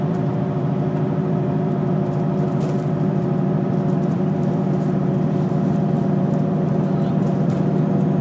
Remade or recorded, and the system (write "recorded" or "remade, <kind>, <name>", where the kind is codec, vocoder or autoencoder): remade, vocoder, BigVGAN v2